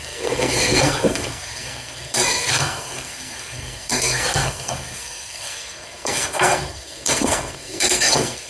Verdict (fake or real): fake